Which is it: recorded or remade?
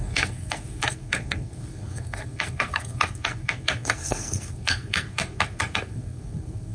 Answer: remade